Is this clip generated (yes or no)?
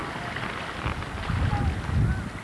no